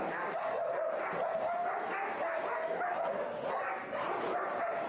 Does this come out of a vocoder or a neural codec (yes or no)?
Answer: no